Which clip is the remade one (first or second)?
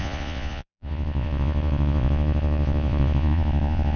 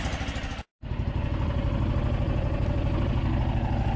first